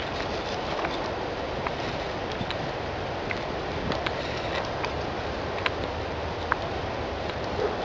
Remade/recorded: recorded